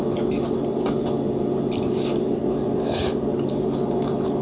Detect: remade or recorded recorded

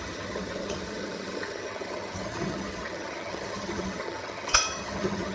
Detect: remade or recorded remade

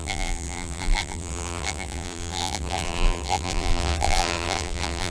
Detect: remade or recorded remade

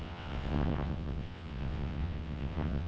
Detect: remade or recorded remade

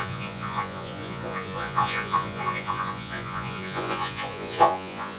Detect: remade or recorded remade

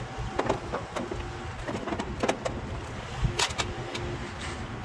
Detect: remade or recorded recorded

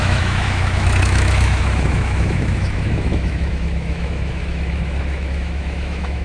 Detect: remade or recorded remade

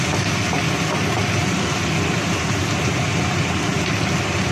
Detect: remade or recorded recorded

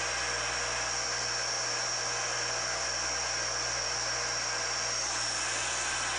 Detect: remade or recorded recorded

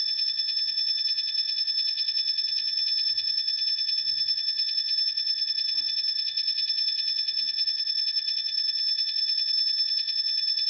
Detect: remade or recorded remade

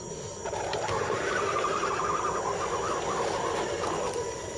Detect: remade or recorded recorded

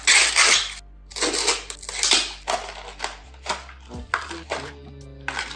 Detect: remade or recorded recorded